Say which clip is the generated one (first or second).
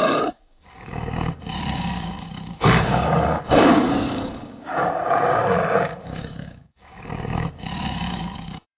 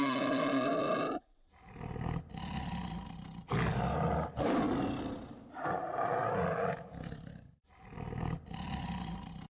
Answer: first